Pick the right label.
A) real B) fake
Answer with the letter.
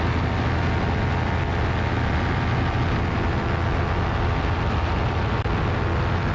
A